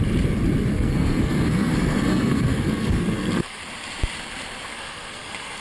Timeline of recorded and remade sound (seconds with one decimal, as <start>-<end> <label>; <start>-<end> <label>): 0.0-0.7 recorded; 0.7-3.6 remade; 3.6-4.7 recorded; 4.7-5.6 remade